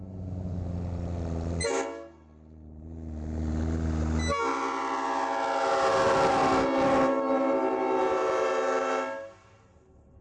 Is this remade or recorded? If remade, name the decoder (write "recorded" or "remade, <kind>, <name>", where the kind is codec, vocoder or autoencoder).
recorded